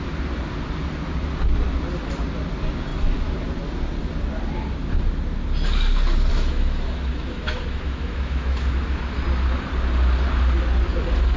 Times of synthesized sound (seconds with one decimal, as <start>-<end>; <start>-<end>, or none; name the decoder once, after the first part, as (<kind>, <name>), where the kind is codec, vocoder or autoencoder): 6.3-9.2 (autoencoder, DAC-VAE)